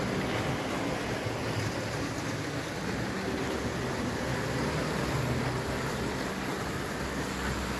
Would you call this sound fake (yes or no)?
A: no